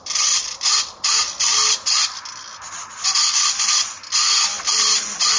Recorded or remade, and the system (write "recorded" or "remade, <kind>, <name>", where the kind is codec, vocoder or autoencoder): recorded